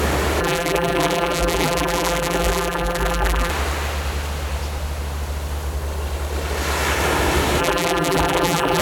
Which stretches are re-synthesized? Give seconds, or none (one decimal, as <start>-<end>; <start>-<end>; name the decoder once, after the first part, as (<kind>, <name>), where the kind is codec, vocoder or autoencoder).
0.4-3.5 (vocoder, BigVGAN v2); 7.6-8.8

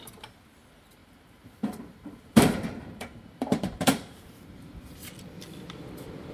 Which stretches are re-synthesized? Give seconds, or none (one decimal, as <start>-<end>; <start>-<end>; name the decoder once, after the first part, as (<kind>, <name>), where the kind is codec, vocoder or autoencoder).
1.0-4.8 (vocoder, BigVGAN v2)

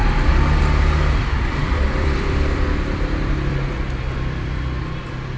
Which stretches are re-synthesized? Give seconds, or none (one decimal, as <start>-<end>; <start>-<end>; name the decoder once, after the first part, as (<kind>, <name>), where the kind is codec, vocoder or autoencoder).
1.6-4.8 (vocoder, BigVGAN v2)